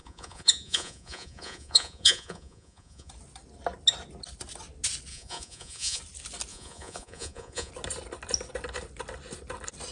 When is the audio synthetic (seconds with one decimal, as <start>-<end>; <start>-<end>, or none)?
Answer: 0.0-3.1; 5.1-6.0; 6.5-7.7